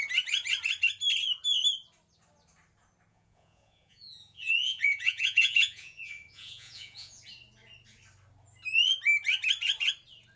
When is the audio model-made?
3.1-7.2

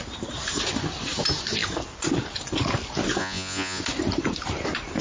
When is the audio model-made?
3.2-3.8

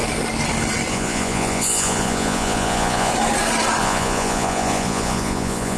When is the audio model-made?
0.9-3.1; 3.8-5.8

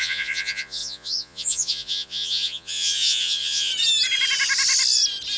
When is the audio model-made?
0.0-3.7

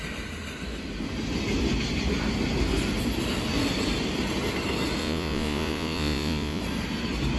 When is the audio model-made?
5.0-6.6

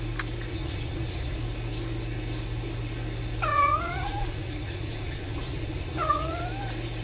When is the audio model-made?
0.5-1.4; 3.5-6.4